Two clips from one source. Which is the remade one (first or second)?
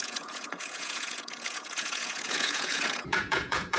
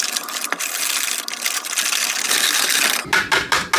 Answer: first